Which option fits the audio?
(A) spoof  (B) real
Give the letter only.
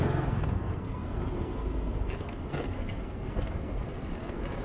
A